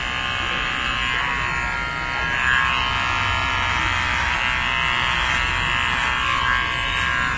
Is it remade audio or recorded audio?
recorded